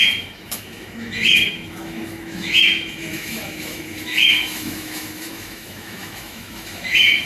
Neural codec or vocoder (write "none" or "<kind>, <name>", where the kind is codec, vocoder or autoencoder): autoencoder, DAC-VAE